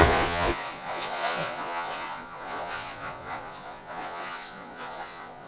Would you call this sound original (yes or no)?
no